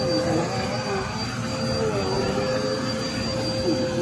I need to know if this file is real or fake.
real